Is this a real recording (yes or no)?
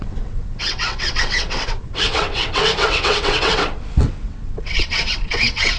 no